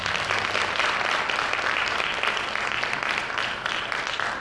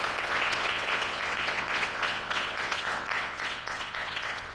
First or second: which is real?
first